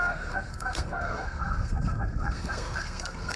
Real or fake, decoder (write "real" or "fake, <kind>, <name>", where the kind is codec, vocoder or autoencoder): fake, codec, SNAC